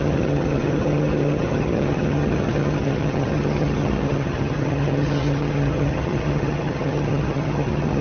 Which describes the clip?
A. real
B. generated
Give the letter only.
B